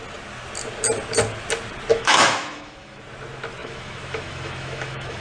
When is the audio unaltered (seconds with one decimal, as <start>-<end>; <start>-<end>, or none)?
0.0-1.9; 3.0-3.6